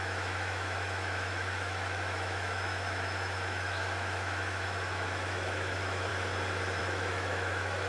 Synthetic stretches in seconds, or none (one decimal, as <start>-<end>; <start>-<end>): 0.0-6.1; 6.8-7.9